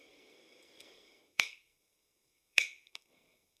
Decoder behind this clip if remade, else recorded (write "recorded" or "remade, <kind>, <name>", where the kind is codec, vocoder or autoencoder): remade, codec, SNAC